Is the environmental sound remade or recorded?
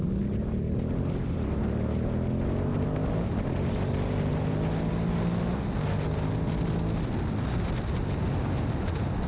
recorded